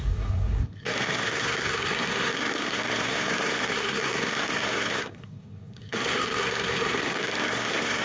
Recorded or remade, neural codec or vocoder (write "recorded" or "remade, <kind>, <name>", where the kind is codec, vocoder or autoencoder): remade, codec, SNAC